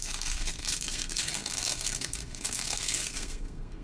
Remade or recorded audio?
remade